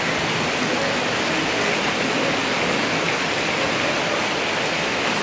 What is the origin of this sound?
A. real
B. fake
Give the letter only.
A